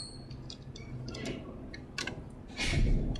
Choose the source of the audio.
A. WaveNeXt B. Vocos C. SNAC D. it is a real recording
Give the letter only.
D